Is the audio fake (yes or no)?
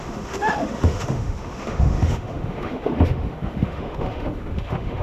yes